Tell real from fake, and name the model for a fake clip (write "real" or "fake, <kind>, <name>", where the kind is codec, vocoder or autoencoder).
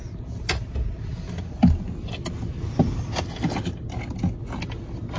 real